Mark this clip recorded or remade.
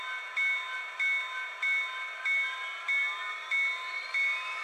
recorded